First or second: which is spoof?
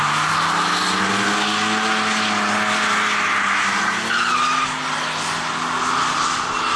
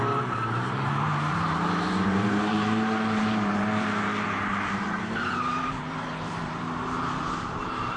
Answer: second